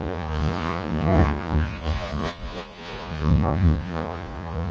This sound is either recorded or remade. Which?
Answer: remade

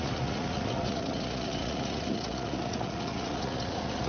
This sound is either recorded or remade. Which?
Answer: remade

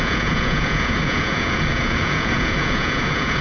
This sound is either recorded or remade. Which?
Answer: remade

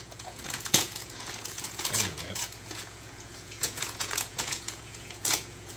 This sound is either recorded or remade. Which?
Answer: remade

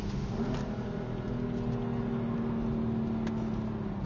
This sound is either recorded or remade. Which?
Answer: recorded